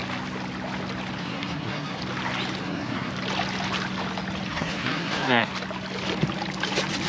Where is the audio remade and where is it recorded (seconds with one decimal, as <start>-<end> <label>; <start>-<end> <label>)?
0.0-1.2 recorded; 1.2-2.0 remade; 2.0-2.6 recorded; 2.6-3.1 remade; 3.1-4.5 recorded; 4.5-5.5 remade; 5.5-7.1 recorded